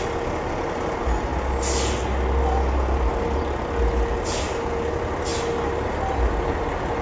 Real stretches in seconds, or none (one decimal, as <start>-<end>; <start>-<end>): 0.0-7.0